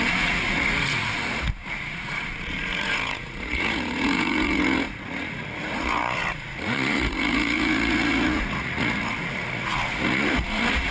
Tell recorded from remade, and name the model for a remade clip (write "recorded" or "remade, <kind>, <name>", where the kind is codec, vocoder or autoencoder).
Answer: remade, vocoder, Vocos